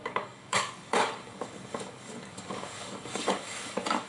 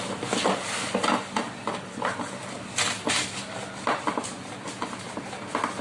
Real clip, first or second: second